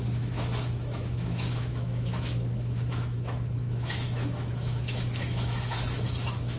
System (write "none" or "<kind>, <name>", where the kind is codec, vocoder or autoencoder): autoencoder, DAC-VAE